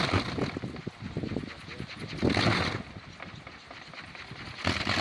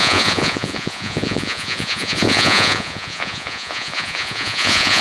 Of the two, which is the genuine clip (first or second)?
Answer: first